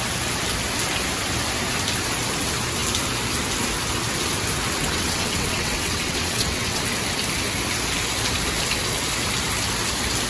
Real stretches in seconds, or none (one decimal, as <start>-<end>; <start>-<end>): 0.0-4.8; 6.8-10.3